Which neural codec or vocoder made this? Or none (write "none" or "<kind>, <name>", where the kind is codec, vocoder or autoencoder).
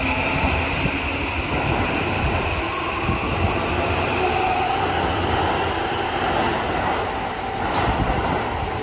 none